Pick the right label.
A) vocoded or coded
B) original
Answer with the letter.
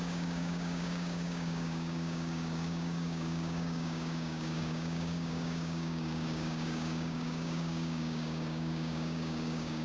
A